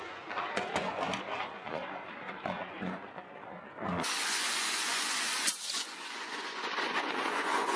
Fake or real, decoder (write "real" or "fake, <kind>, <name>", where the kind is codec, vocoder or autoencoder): fake, vocoder, Vocos